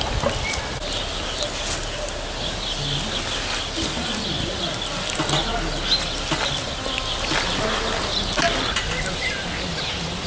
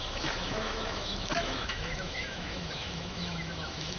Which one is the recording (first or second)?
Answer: first